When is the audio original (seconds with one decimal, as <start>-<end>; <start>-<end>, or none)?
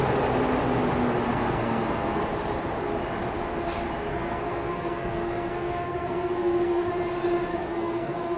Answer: 0.0-1.3; 2.2-4.1; 6.9-7.5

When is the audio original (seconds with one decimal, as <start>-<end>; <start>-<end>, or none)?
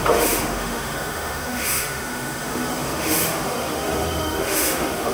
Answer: none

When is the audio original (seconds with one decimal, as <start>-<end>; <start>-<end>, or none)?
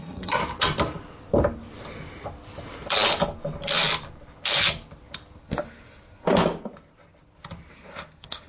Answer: 0.4-5.4; 6.4-7.7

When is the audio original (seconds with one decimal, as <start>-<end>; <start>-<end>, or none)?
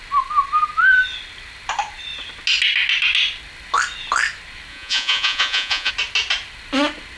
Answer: 0.0-4.7; 5.9-7.2